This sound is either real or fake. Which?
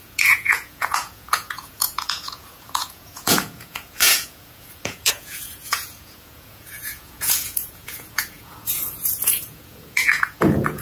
fake